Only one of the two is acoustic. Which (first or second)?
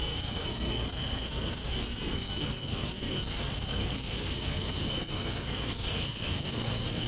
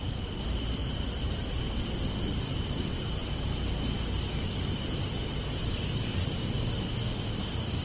second